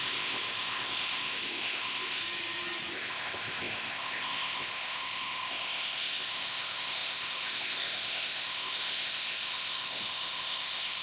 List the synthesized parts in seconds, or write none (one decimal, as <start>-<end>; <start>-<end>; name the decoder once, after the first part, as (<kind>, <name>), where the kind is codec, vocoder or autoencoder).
0.0-2.2 (codec, ZipCodec); 2.9-11.0